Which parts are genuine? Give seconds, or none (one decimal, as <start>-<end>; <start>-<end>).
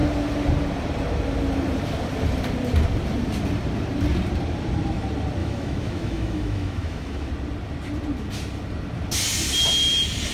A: 0.0-5.4; 7.3-10.3